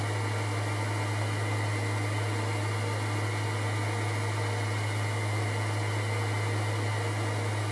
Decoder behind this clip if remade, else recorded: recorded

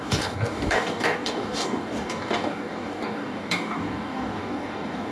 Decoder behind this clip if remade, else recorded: remade, codec, DAC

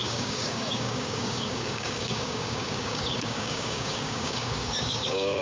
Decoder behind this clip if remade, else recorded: remade, codec, DAC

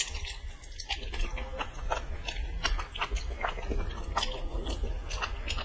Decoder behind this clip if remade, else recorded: recorded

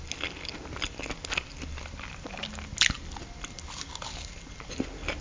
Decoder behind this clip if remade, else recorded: recorded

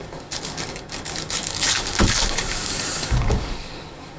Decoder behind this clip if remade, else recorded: remade, codec, DAC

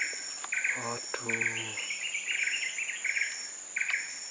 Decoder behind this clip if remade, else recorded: recorded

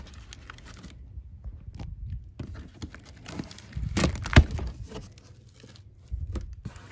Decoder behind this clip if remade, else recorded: recorded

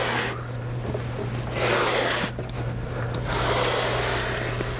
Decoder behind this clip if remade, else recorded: recorded